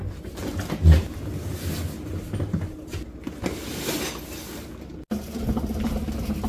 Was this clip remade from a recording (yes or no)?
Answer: no